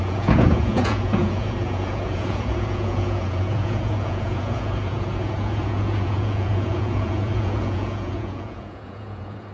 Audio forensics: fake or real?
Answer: fake